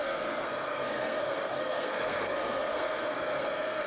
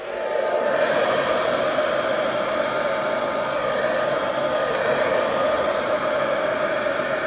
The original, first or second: second